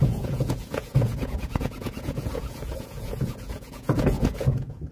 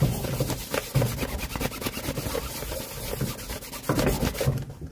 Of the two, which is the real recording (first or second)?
second